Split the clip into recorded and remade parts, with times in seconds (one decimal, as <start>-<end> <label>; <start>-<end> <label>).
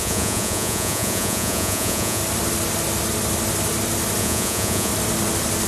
0.0-2.2 remade; 2.2-4.2 recorded; 4.2-4.9 remade; 4.9-5.7 recorded